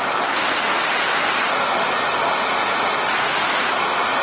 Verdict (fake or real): real